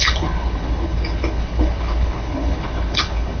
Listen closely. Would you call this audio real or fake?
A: fake